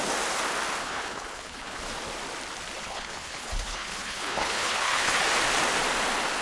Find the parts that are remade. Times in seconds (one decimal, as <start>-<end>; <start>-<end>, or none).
0.8-1.8; 2.8-5.2

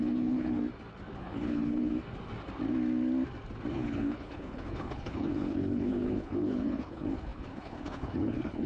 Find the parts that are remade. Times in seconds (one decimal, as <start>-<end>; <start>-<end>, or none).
0.0-0.6; 1.2-1.9; 3.7-8.7

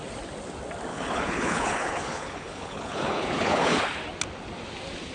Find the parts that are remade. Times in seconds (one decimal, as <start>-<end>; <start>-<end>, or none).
0.9-3.8

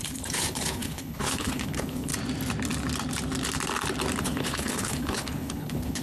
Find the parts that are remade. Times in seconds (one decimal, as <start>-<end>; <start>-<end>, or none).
0.0-2.1; 4.2-6.0

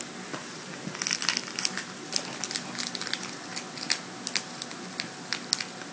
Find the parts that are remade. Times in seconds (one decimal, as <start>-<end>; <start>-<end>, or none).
none

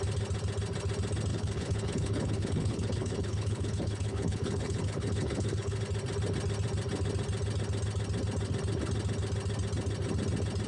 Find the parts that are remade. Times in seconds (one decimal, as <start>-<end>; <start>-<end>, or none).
1.3-5.8

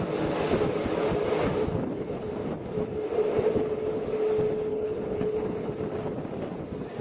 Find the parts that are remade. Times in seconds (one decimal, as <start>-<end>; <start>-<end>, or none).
1.7-2.3; 4.7-5.7

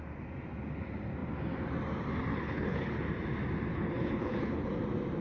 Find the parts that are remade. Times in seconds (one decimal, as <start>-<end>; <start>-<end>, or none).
2.3-3.0; 3.7-4.7